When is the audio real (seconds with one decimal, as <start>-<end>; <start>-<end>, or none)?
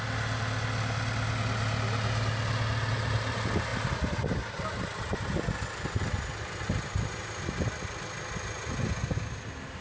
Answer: 0.0-9.8